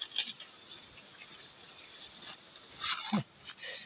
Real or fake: real